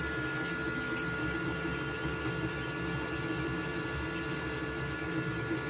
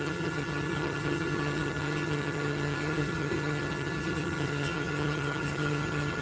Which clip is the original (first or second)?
first